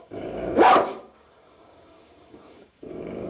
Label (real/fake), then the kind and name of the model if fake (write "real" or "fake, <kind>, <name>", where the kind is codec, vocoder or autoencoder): fake, codec, DAC